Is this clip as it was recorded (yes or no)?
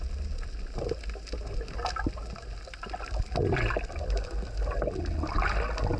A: yes